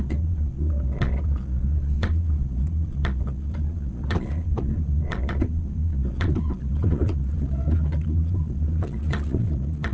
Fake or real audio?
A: fake